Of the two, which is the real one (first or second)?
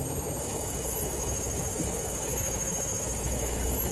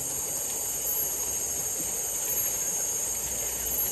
second